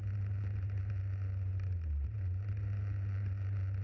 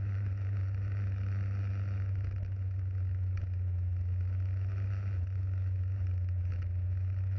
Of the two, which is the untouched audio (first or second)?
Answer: first